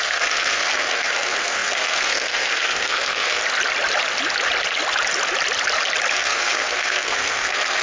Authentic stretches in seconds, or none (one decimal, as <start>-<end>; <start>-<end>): 3.4-6.1